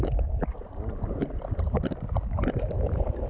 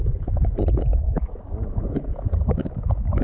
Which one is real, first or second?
first